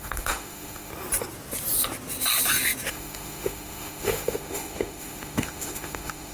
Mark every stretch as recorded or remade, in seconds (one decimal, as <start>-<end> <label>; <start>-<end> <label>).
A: 0.0-0.9 remade; 0.9-2.9 recorded; 2.9-6.3 remade